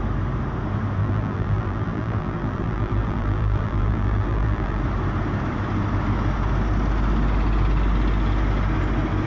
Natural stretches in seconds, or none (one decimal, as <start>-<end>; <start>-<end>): 0.0-1.0; 4.8-9.3

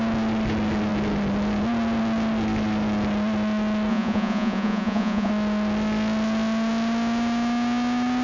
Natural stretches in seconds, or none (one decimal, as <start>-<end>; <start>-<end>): 0.0-3.9; 5.3-8.2

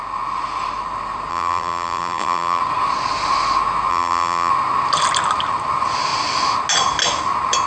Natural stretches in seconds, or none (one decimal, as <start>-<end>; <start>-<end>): 0.0-1.3; 2.6-3.9; 4.5-7.7

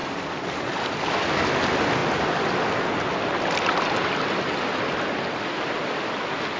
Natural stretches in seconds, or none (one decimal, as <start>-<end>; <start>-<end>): 0.8-6.6

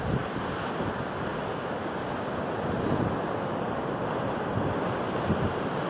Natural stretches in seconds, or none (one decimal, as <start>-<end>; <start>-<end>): 0.0-5.9